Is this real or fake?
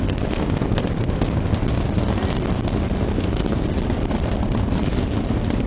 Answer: real